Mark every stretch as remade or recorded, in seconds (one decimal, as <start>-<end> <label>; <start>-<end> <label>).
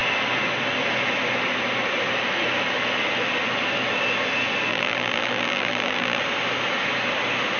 0.0-4.7 recorded; 4.7-6.2 remade; 6.2-7.6 recorded